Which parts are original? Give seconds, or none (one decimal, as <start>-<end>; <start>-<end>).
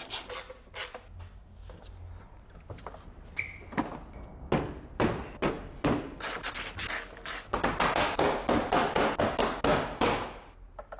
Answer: 0.0-11.0